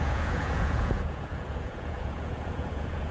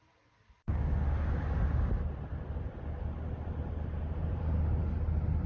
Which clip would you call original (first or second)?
second